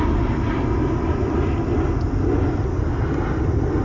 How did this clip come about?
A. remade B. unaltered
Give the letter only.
B